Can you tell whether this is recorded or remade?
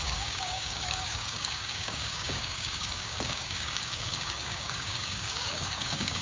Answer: remade